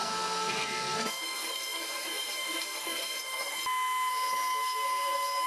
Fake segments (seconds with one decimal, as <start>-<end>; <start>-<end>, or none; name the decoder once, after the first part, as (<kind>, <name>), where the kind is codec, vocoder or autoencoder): 0.0-3.6 (codec, SNAC); 4.1-5.5